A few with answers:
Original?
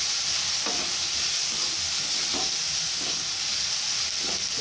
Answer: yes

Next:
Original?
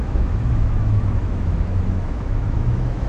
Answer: no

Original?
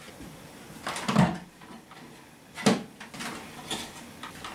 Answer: yes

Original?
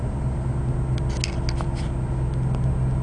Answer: yes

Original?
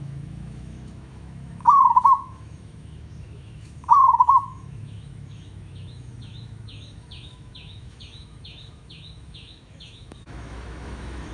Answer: no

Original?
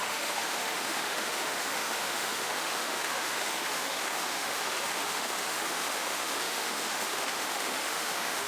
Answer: no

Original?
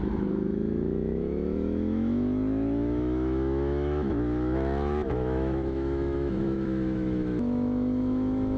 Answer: no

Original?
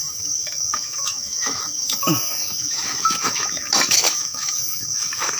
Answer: no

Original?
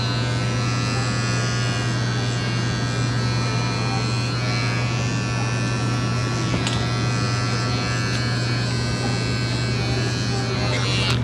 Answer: yes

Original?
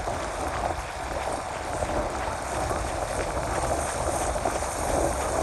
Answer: yes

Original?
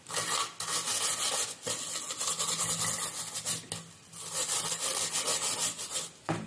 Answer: yes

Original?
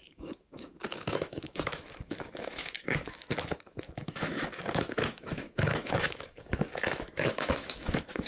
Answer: no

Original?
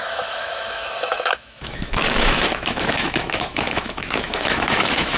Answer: no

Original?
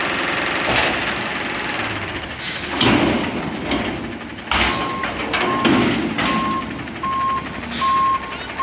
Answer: yes